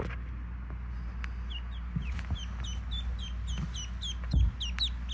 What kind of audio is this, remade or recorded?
recorded